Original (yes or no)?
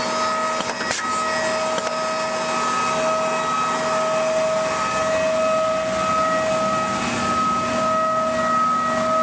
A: yes